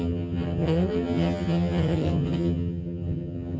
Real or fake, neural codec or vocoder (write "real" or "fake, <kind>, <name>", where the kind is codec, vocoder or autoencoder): fake, vocoder, HiFi-GAN